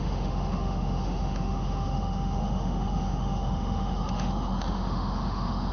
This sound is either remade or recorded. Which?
remade